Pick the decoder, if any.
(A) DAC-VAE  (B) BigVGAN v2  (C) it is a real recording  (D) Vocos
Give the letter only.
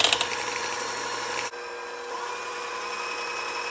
C